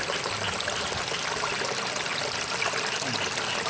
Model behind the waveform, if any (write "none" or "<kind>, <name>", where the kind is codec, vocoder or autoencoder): none